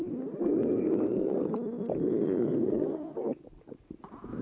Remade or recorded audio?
recorded